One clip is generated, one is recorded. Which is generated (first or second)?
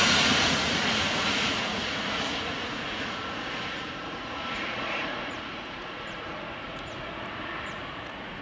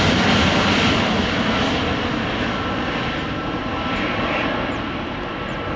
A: first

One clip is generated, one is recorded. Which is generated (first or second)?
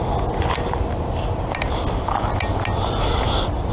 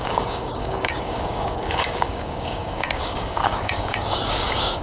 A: second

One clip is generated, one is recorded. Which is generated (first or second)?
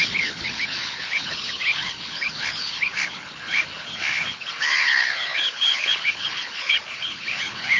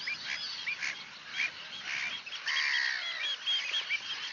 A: first